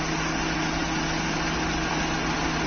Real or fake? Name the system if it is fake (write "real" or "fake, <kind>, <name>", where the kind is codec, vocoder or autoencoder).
real